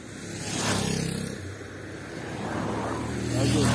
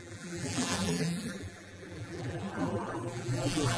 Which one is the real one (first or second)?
first